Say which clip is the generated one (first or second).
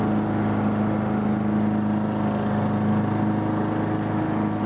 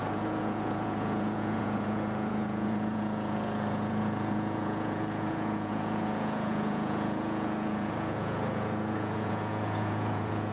second